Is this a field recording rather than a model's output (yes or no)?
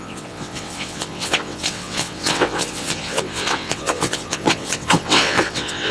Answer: no